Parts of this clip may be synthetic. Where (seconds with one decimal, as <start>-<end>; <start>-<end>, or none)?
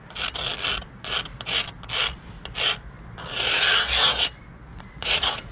4.7-5.5